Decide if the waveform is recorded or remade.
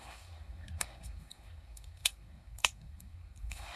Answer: remade